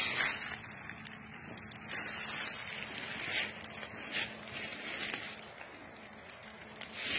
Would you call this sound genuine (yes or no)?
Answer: yes